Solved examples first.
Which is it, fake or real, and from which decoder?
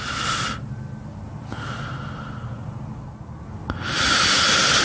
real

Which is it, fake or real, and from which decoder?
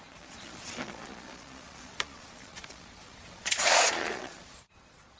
fake, vocoder, Vocos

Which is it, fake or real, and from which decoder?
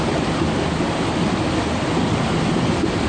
real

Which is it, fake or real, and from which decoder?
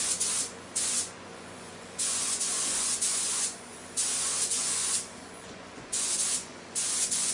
fake, vocoder, Vocos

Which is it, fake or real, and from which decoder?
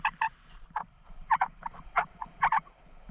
fake, vocoder, BigVGAN v2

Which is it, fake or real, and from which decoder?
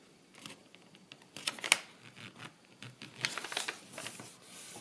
real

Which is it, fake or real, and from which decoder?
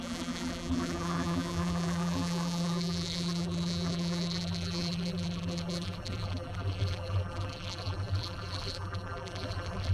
fake, vocoder, BigVGAN v2